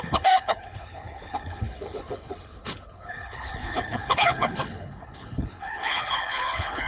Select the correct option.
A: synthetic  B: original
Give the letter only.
A